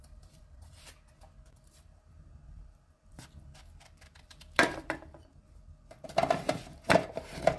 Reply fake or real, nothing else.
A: fake